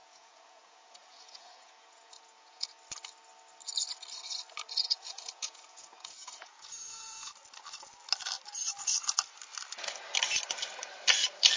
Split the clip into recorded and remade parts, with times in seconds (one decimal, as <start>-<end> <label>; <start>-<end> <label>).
0.0-2.7 remade; 2.7-4.8 recorded; 4.8-7.3 remade; 7.3-11.6 recorded